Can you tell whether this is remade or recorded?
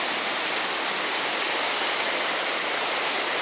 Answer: recorded